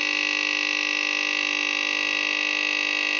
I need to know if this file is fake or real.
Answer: real